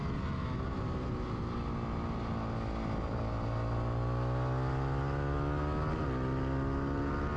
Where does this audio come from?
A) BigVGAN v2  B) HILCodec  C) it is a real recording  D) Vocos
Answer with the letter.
C